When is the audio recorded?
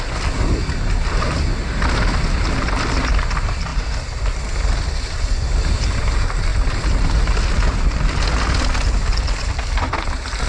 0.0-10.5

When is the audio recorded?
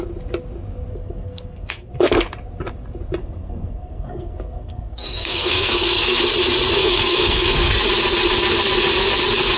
0.0-0.9; 1.9-3.2; 6.2-6.8; 7.8-9.6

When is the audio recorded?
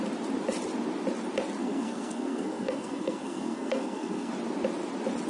0.0-1.6; 4.3-5.3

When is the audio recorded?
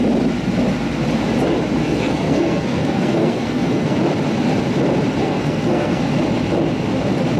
0.0-1.8; 4.0-5.2; 6.0-7.4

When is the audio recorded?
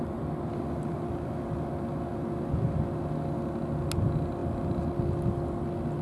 0.0-6.0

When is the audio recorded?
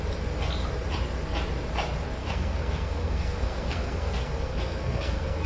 0.0-2.2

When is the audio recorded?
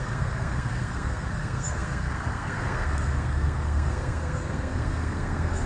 none